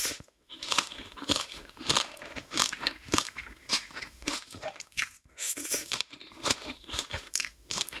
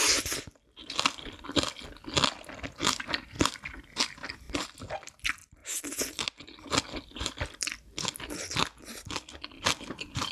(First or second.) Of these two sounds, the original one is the second